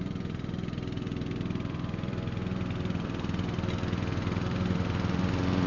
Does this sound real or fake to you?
fake